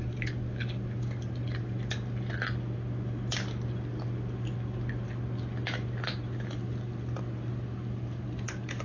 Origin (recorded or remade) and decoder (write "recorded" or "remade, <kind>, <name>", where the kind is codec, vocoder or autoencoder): recorded